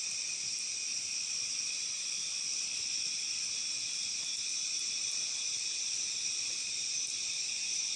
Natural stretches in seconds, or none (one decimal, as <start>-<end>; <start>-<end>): 0.0-0.9; 3.4-8.0